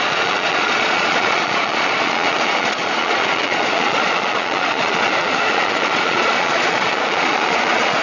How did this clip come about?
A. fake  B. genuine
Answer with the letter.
A